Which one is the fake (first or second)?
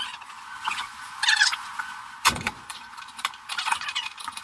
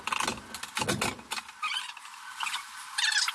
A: first